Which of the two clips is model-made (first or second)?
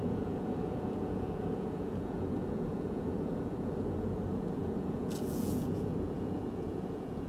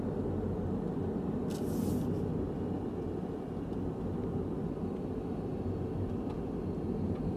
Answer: first